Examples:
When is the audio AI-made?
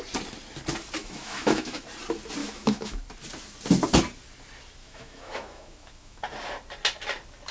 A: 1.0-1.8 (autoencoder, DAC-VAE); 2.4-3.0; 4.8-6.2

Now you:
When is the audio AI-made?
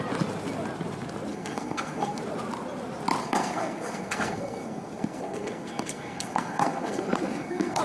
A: 1.3-2.2 (codec, SNAC); 3.2-7.8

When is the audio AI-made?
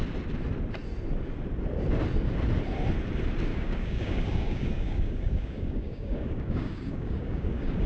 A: 3.5-7.9 (codec, DAC)